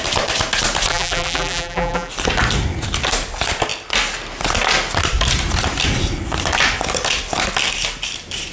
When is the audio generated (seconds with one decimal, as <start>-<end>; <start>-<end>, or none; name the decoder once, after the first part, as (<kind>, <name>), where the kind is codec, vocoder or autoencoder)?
0.9-2.1 (vocoder, BigVGAN v2)